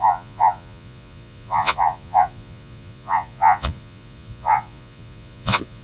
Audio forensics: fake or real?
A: fake